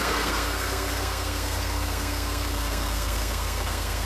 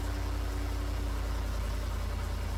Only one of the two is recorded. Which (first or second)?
second